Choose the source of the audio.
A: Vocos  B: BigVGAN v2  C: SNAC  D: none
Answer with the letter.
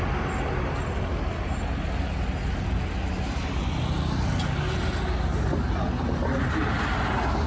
D